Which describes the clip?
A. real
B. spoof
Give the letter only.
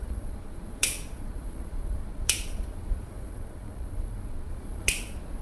B